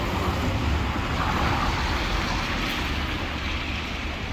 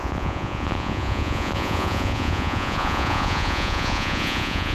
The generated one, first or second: second